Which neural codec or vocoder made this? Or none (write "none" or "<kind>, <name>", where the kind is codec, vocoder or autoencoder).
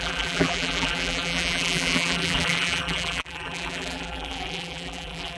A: vocoder, BigVGAN v2